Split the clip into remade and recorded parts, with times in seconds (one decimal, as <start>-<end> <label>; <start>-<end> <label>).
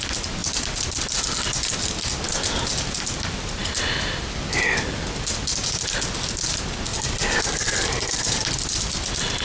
0.0-6.9 recorded; 6.9-8.5 remade; 8.5-9.4 recorded